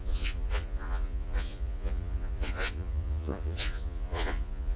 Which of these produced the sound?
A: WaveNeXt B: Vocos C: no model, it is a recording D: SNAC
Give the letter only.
B